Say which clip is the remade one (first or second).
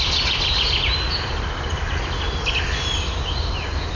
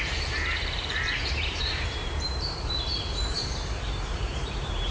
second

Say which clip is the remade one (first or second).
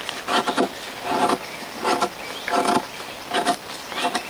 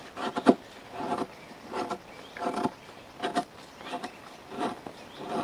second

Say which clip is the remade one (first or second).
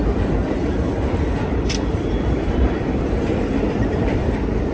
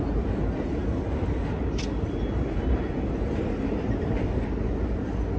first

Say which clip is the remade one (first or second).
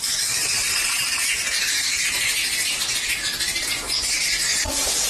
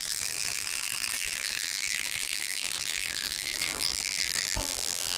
second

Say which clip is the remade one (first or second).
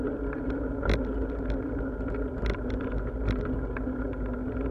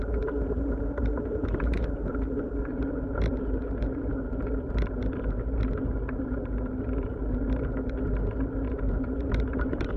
second